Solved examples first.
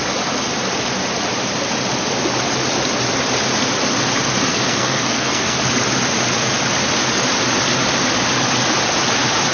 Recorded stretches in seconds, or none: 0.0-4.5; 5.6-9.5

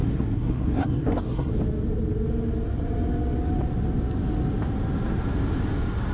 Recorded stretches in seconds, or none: 1.5-6.1

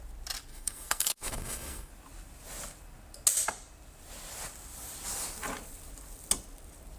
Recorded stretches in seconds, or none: 0.0-0.5; 1.9-7.0

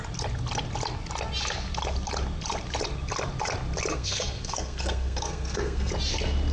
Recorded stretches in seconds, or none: 0.0-3.9; 5.9-6.5

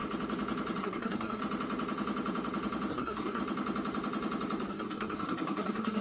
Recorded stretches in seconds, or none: 0.0-0.8; 1.4-2.9; 3.4-4.7